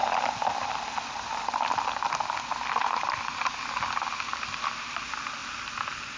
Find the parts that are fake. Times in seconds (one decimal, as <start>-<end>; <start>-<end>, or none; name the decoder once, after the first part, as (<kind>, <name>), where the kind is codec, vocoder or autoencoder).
none